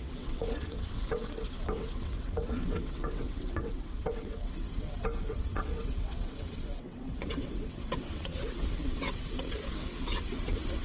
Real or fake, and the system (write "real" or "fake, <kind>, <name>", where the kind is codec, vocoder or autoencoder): fake, vocoder, WaveNeXt